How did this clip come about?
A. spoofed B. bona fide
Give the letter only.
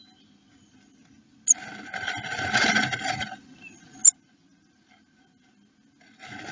B